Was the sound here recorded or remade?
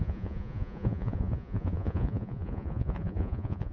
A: remade